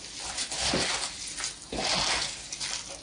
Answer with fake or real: real